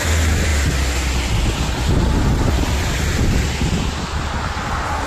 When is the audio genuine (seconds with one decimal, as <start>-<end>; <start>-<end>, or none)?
0.5-2.5